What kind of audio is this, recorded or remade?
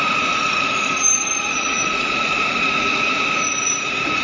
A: remade